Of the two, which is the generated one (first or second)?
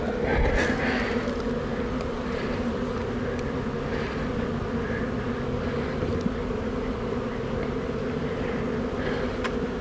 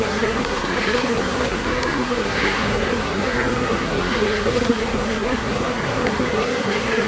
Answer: second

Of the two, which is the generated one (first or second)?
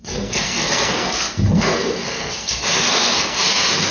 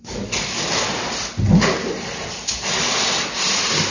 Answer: first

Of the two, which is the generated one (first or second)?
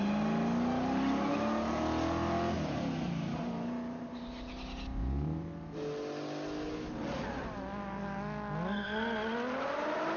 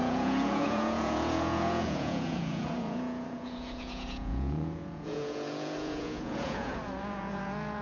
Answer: second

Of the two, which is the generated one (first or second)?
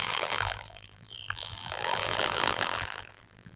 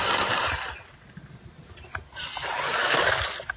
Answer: first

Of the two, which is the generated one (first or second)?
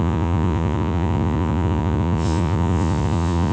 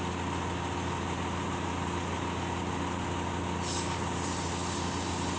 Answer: first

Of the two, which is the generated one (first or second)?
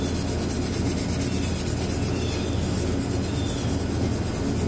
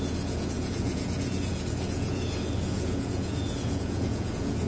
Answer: second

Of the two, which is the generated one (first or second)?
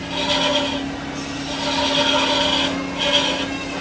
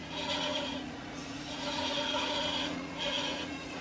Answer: second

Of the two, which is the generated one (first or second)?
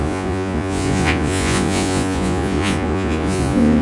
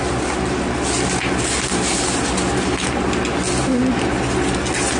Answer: first